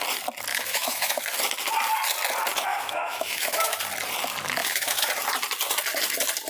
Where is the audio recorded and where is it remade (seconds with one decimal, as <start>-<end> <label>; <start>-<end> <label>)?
0.0-0.5 recorded; 0.5-1.2 remade; 1.2-2.7 recorded; 2.7-3.8 remade; 3.8-4.6 recorded; 4.6-5.1 remade; 5.1-6.5 recorded